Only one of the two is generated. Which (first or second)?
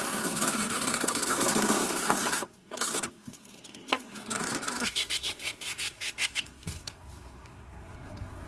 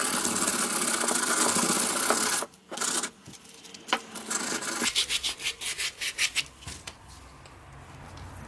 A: first